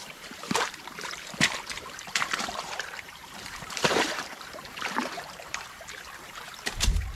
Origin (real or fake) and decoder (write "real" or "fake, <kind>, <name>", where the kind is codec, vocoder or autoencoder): fake, vocoder, BigVGAN v2